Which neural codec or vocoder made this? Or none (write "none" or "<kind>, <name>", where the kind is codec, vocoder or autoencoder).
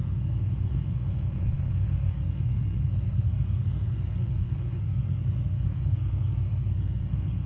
codec, SNAC